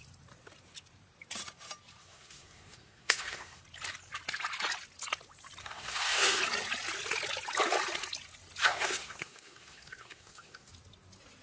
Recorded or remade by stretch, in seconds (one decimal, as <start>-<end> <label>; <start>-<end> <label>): 0.0-2.0 recorded; 2.0-3.6 remade; 3.6-5.6 recorded; 5.6-6.4 remade; 6.4-8.6 recorded; 8.6-10.7 remade; 10.7-11.4 recorded